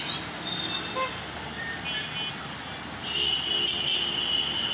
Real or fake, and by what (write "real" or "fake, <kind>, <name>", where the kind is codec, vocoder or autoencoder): real